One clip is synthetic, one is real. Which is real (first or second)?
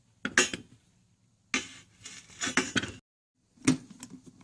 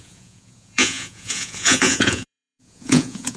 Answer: first